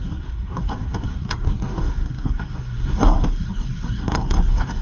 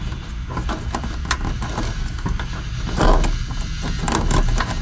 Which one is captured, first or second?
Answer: second